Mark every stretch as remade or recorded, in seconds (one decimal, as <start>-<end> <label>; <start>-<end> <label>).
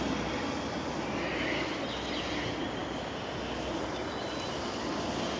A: 0.0-5.4 recorded